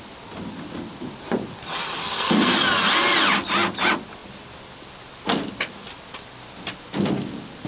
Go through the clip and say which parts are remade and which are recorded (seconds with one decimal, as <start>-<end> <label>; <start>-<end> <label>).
0.0-2.0 recorded; 2.0-2.5 remade; 2.5-7.7 recorded